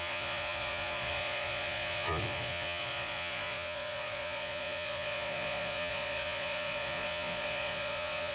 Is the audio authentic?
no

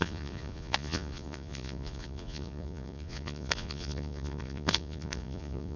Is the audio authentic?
no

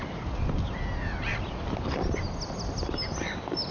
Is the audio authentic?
yes